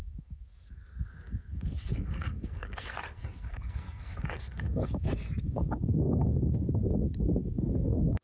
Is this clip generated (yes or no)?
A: yes